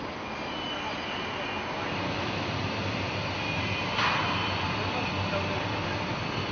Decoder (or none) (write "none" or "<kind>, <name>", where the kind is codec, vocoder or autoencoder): none